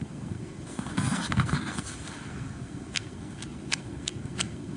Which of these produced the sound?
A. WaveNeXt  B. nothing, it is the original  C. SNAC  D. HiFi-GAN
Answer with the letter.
C